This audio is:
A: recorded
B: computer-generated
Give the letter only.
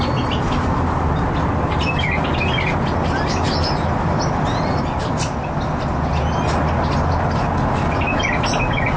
A